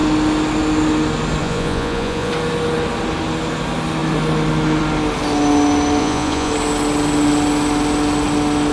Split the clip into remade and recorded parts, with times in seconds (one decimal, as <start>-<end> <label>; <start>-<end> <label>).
0.0-1.4 recorded; 1.4-2.3 remade; 2.3-6.0 recorded; 6.0-6.5 remade; 6.5-8.7 recorded